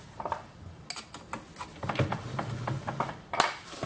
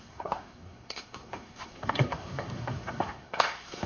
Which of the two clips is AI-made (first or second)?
second